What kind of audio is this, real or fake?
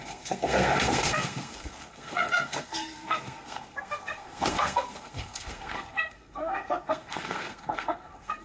fake